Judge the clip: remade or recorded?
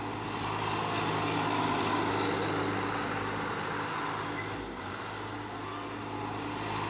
recorded